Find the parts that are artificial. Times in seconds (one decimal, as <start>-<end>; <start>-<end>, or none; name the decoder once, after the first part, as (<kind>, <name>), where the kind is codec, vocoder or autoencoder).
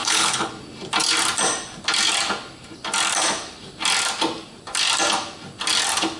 0.0-0.5 (codec, HILCodec)